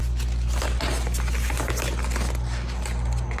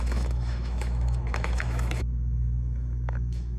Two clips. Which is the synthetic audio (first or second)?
second